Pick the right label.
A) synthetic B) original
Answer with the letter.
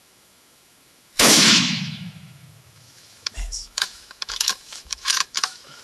A